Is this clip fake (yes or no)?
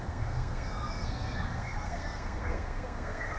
yes